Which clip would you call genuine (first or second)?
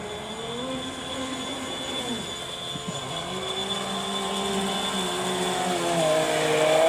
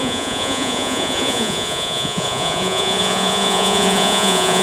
first